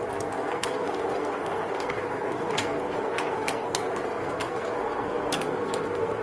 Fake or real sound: fake